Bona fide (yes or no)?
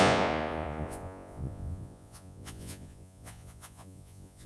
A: no